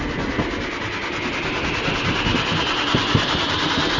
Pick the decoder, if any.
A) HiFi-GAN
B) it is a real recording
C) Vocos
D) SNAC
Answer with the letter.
B